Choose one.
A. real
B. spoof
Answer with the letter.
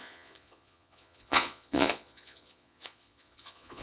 B